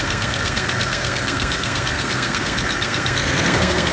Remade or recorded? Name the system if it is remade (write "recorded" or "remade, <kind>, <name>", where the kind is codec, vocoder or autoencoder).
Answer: remade, codec, SNAC